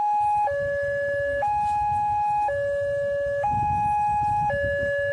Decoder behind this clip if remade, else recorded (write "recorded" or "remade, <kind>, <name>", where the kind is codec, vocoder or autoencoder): recorded